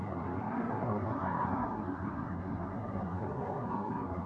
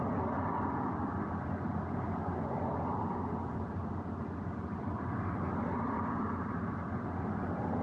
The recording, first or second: second